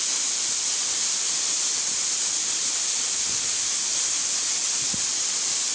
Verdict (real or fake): real